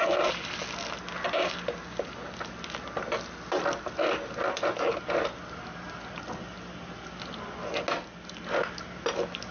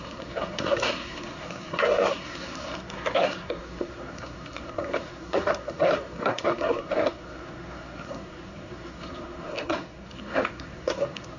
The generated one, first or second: second